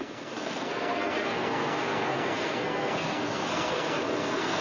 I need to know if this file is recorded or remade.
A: remade